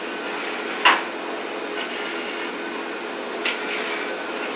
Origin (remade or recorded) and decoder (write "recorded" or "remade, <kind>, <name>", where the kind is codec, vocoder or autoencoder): recorded